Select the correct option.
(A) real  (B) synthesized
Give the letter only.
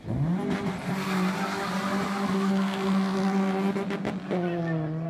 A